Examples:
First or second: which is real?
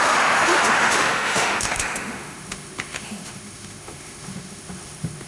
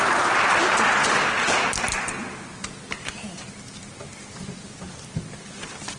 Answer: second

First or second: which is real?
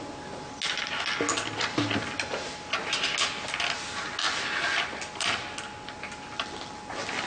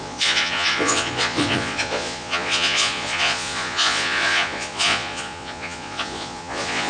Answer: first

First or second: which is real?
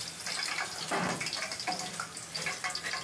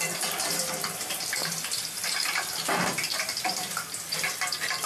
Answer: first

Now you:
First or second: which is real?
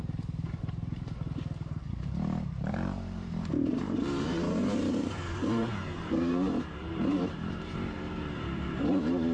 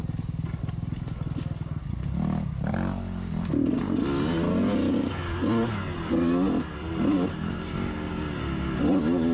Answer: second